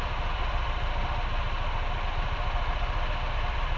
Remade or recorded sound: recorded